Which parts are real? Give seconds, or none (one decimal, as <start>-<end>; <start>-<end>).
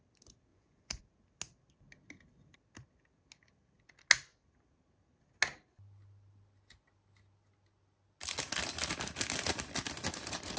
0.0-0.5; 1.0-10.6